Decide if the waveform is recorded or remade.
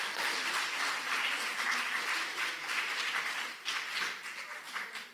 recorded